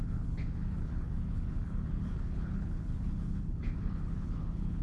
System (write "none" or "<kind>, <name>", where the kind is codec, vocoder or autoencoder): codec, HILCodec